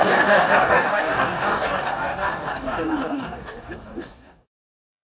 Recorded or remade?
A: remade